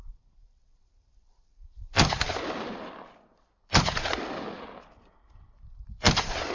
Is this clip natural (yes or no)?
no